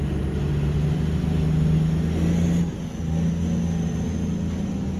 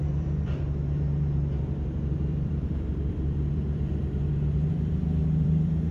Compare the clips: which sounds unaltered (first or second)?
first